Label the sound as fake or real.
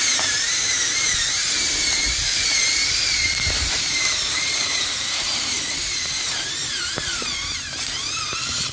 fake